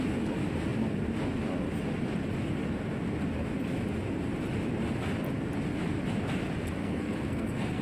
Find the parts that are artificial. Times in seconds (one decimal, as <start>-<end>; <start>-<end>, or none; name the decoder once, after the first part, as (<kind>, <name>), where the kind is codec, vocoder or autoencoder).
6.8-7.8 (codec, SNAC)